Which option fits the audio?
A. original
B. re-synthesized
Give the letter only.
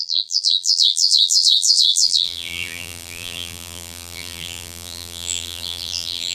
B